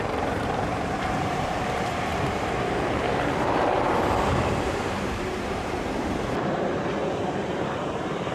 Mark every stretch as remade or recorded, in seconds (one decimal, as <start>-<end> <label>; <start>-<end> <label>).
0.0-8.3 remade